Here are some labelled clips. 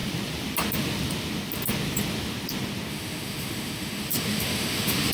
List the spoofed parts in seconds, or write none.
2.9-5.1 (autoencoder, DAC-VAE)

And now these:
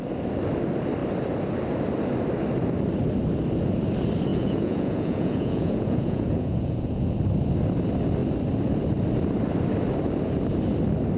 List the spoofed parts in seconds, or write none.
4.3-7.2 (vocoder, Vocos)

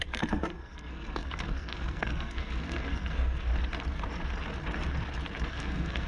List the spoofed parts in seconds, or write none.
0.0-3.5 (codec, SNAC); 5.5-6.1